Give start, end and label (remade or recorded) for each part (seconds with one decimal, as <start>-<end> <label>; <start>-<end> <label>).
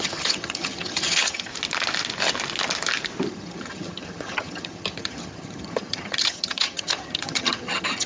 0.0-1.5 remade; 1.5-3.3 recorded; 3.3-8.1 remade